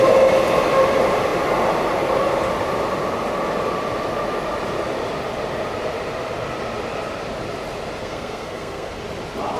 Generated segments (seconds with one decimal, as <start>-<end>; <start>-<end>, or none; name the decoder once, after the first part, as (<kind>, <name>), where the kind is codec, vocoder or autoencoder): 8.0-9.0 (codec, SNAC)